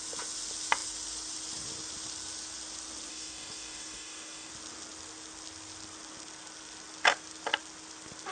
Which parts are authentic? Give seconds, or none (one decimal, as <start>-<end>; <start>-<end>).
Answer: 0.0-3.1; 4.5-8.3